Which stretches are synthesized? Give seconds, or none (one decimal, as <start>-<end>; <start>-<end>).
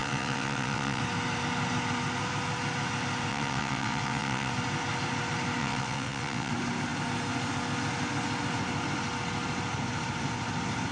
0.0-1.0; 3.3-4.5; 5.6-6.5